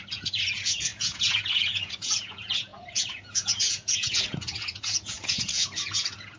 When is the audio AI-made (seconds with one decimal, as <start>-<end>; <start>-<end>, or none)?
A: 0.0-6.4

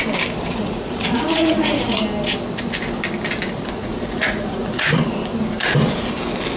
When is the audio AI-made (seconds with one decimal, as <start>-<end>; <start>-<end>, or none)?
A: 0.5-2.0; 3.8-5.0

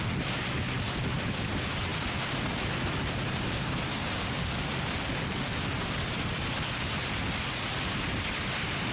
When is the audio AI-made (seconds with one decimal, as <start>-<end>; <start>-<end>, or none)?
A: none